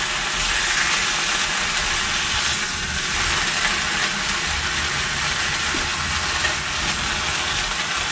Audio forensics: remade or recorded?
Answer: recorded